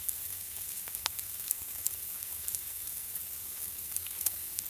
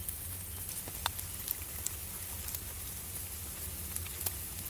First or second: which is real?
second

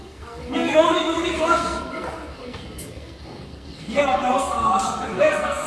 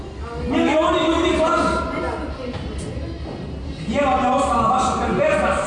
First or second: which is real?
second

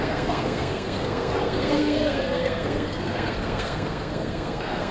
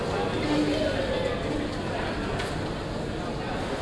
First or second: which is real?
second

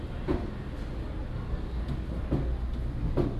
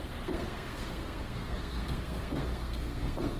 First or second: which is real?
first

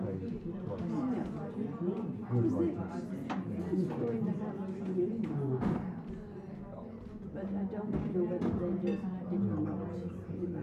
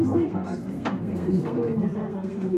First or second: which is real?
first